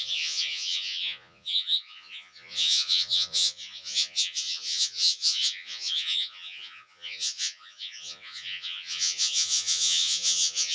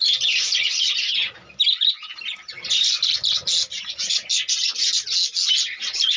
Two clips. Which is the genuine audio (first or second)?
second